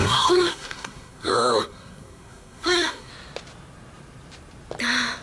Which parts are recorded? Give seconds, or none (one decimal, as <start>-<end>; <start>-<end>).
3.1-5.2